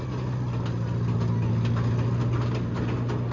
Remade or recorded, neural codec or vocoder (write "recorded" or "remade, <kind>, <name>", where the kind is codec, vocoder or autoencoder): recorded